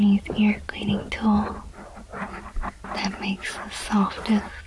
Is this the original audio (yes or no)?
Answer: yes